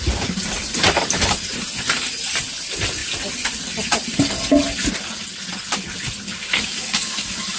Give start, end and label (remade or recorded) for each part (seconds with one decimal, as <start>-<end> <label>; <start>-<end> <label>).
0.0-6.4 recorded; 6.4-7.6 remade